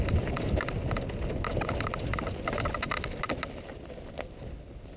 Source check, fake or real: real